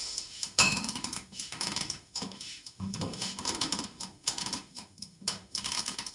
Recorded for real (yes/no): no